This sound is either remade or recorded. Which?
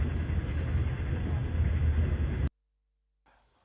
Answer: recorded